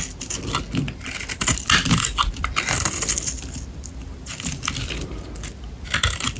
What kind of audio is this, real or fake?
real